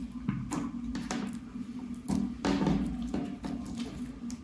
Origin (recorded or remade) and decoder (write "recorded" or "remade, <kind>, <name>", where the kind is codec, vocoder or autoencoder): recorded